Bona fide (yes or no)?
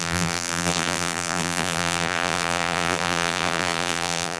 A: no